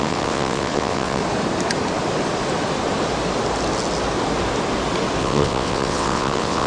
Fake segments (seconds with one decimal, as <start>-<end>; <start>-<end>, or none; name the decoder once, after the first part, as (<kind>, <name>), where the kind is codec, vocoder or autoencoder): 0.0-1.2 (vocoder, WaveNeXt); 5.2-6.7

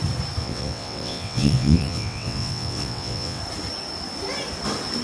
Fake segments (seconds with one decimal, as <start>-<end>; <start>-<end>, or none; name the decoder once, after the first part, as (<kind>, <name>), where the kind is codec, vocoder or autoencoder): 0.4-3.4 (vocoder, WaveNeXt)

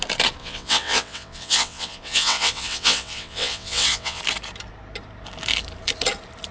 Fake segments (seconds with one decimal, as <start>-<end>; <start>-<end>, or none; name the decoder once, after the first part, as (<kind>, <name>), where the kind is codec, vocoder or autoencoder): 0.4-4.2 (vocoder, WaveNeXt)

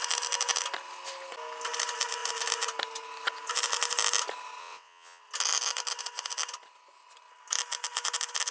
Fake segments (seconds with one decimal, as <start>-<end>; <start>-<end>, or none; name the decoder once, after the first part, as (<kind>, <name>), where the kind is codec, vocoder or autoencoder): 4.6-5.2 (vocoder, WaveNeXt)